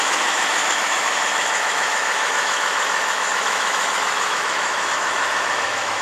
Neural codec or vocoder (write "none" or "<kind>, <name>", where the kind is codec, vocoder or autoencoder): autoencoder, DAC-VAE